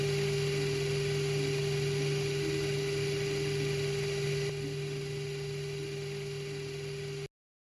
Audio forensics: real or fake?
real